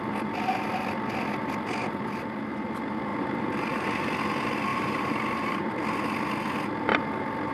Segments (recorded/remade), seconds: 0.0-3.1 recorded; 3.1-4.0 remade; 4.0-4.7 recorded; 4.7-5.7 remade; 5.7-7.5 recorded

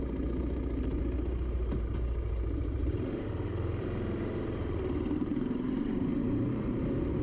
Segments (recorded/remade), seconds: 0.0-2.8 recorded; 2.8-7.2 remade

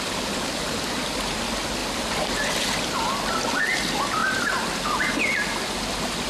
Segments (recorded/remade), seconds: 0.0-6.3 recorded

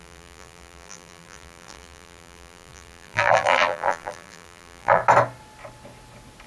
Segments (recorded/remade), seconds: 0.0-5.0 remade; 5.0-6.5 recorded

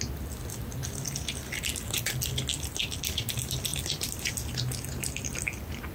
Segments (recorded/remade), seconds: 0.0-0.8 recorded; 0.8-1.4 remade; 1.4-3.7 recorded; 3.7-4.3 remade; 4.3-5.9 recorded

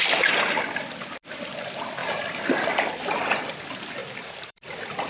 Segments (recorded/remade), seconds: 0.0-2.0 recorded; 2.0-3.4 remade; 3.4-4.0 recorded; 4.0-4.6 remade; 4.6-5.1 recorded

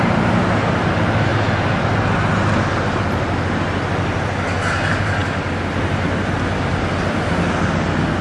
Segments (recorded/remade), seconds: 0.0-8.2 recorded